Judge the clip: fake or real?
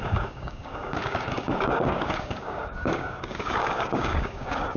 fake